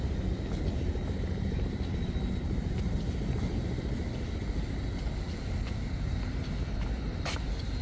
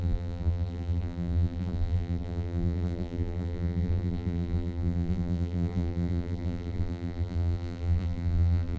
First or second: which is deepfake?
second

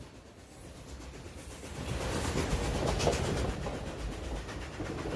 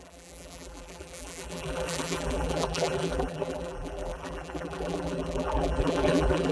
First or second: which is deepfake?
second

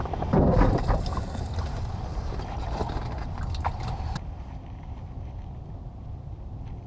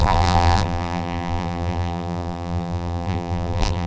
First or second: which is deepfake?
second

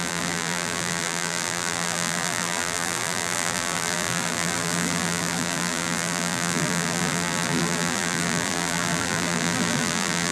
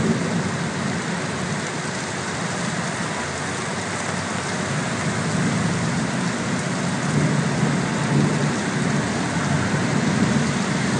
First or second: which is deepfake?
first